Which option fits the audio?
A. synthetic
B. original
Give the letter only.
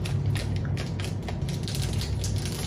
B